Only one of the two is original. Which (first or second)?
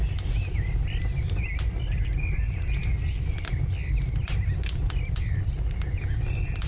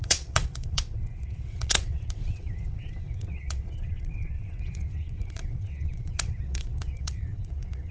first